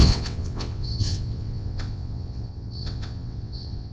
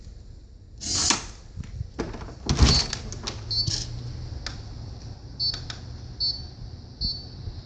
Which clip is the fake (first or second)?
first